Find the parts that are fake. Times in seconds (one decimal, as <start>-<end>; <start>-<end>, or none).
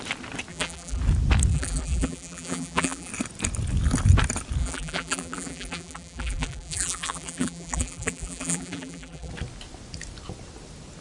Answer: 0.5-1.0; 1.5-3.1; 4.6-9.3